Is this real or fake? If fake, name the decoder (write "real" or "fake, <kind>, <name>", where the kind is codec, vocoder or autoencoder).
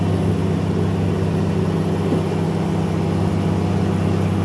real